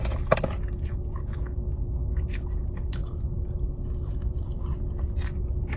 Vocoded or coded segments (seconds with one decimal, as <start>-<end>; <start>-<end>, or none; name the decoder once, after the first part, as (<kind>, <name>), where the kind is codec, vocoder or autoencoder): 1.2-2.4 (codec, DAC)